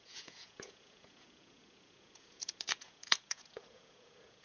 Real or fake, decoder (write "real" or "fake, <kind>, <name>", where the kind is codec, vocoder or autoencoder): fake, vocoder, Vocos